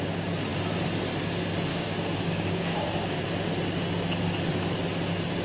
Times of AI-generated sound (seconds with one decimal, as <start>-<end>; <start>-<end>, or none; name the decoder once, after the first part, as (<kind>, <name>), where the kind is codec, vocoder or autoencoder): 1.7-3.2 (codec, DAC)